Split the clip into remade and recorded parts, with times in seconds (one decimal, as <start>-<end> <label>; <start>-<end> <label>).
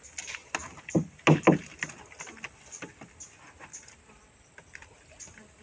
0.0-5.6 recorded